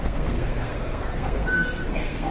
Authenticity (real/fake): fake